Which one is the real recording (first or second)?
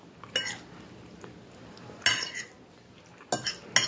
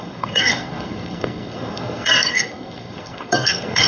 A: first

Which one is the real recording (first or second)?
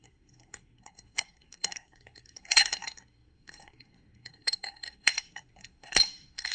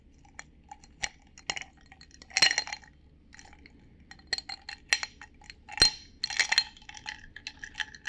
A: second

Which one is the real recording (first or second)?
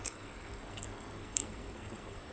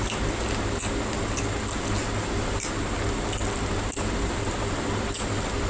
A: second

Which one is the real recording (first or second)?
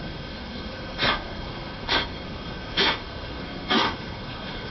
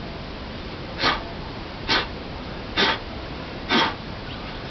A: second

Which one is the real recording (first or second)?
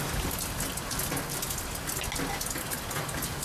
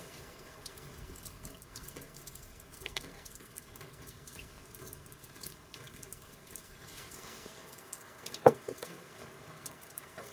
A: first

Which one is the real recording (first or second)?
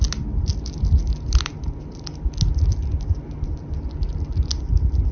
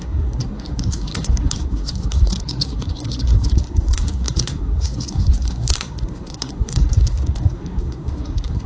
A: first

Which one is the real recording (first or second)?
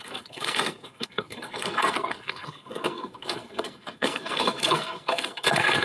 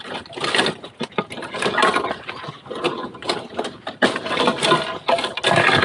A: second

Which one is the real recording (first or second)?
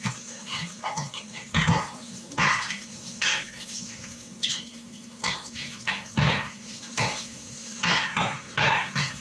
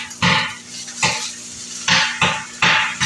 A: second